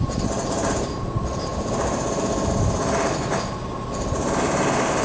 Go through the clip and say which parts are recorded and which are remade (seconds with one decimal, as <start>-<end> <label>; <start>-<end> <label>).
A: 0.0-5.0 recorded